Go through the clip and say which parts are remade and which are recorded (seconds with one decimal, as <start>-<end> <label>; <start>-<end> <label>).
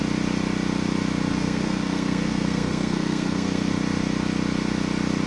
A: 0.0-1.3 recorded; 1.3-3.7 remade; 3.7-5.3 recorded